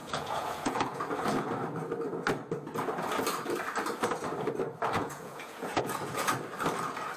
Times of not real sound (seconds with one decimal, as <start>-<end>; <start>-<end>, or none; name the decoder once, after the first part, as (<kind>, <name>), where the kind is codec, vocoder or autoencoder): 0.0-1.0 (vocoder, Vocos); 5.0-6.3